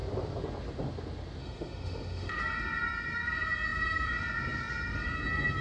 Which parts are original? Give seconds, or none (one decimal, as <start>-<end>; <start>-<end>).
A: 0.0-1.4; 2.4-5.6